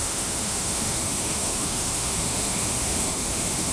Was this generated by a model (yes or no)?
yes